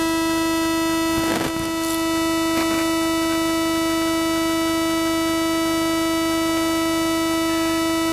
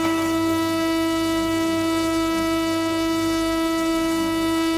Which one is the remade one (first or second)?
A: second